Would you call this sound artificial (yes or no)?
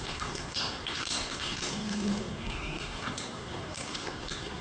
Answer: yes